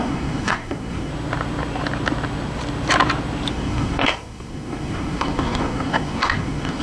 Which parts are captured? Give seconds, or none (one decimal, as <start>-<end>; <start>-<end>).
1.1-3.5